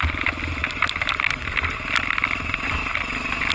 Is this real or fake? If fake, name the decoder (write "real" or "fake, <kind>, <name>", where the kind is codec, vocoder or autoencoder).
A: real